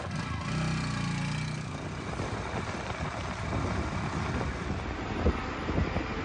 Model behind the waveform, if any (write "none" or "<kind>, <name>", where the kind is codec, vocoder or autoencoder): none